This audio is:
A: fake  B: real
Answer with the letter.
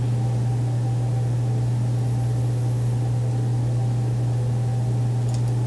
B